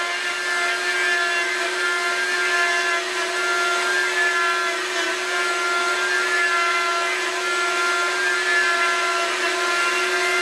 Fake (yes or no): no